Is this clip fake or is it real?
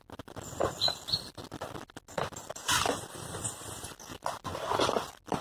real